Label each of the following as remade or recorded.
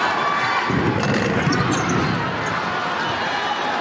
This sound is recorded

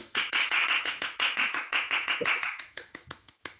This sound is remade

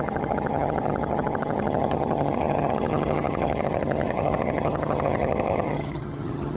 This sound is remade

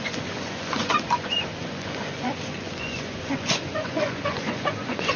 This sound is remade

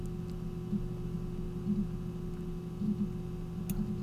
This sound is recorded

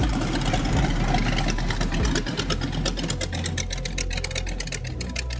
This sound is recorded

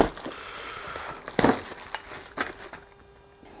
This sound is recorded